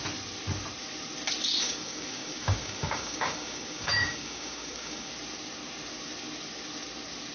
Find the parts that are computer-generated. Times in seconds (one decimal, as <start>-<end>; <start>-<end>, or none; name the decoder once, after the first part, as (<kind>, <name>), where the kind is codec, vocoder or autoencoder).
1.6-5.1 (codec, DAC)